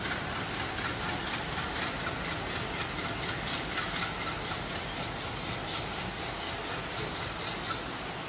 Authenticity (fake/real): real